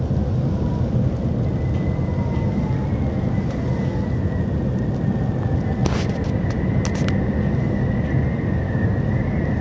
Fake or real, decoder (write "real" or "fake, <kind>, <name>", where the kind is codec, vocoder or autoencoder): real